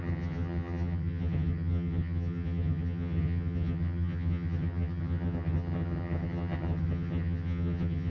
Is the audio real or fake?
fake